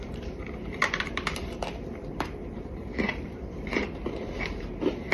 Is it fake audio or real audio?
fake